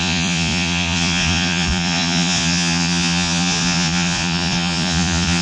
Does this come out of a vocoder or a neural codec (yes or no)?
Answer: yes